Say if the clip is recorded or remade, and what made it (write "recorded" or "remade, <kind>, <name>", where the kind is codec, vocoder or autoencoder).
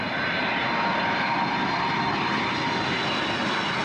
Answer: recorded